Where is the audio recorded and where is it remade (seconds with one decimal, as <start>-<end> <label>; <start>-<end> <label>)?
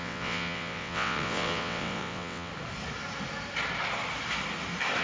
0.0-2.5 remade; 2.5-5.0 recorded